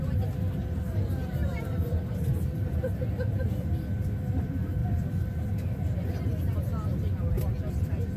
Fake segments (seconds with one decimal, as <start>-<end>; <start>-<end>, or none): 1.2-3.5; 4.8-5.5; 6.9-7.5